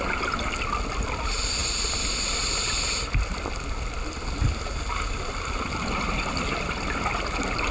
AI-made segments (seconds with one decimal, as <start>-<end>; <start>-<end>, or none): none